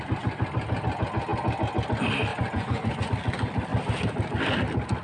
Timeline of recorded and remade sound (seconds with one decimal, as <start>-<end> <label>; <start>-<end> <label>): 0.0-2.3 recorded; 2.3-3.1 remade; 3.1-5.0 recorded